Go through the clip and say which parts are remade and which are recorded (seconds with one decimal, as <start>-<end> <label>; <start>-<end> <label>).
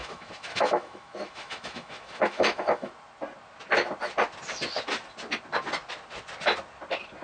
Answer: 0.0-2.9 remade; 2.9-7.2 recorded